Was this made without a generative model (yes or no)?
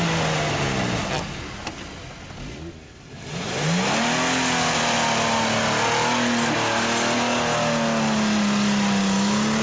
yes